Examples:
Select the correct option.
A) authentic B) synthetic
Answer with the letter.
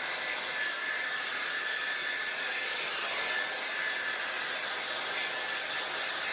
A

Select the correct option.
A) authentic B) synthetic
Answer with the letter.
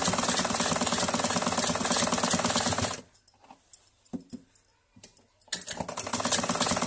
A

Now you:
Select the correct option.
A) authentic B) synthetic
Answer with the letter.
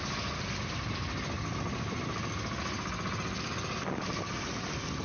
A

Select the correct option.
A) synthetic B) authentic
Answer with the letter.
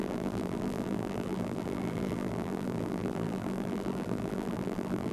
A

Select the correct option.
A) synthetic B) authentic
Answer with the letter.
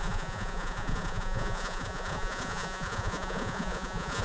A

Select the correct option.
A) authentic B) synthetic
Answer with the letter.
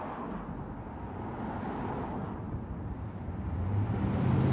A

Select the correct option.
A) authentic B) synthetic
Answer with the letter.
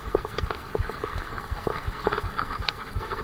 B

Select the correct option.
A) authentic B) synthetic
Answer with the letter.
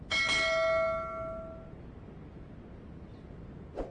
A